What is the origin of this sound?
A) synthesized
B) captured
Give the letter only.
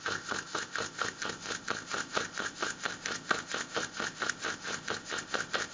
A